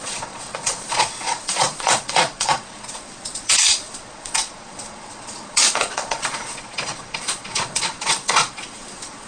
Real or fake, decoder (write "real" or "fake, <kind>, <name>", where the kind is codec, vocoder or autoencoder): fake, vocoder, Vocos